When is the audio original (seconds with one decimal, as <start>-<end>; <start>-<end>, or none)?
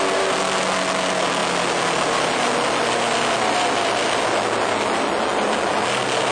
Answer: 0.0-6.3